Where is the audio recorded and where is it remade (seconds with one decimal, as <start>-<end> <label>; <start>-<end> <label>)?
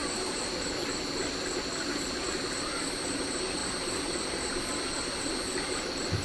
0.0-0.7 remade; 0.7-2.3 recorded; 2.3-3.2 remade; 3.2-6.2 recorded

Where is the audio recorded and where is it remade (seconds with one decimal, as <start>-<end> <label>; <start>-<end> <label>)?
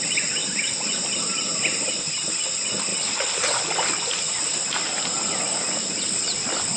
0.0-6.8 recorded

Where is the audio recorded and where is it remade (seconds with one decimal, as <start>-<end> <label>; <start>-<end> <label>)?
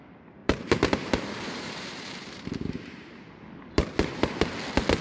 0.0-0.4 recorded; 0.4-3.4 remade; 3.4-5.0 recorded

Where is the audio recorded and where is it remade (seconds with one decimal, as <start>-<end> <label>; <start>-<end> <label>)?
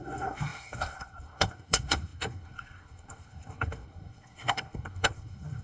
0.0-5.6 remade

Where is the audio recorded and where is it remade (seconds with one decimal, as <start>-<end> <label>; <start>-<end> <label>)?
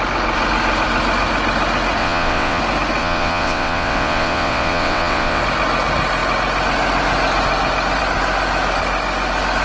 0.0-2.0 recorded; 2.0-2.6 remade; 2.6-3.0 recorded; 3.0-5.4 remade; 5.4-9.6 recorded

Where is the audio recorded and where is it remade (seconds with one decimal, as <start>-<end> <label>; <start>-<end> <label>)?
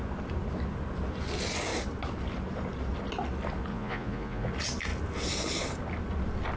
0.0-3.7 recorded; 3.7-4.5 remade; 4.5-6.6 recorded